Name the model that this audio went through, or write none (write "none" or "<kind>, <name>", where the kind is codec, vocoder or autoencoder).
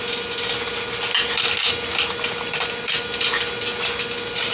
none